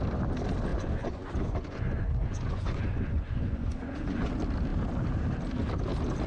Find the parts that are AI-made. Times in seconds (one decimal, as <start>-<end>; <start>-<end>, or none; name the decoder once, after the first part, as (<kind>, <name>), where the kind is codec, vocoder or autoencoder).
0.7-4.3 (vocoder, Vocos)